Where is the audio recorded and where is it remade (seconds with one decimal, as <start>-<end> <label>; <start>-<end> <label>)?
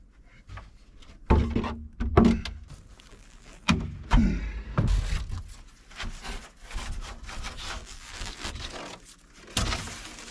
0.0-3.1 recorded; 3.1-3.7 remade; 3.7-7.8 recorded; 7.8-8.5 remade; 8.5-10.3 recorded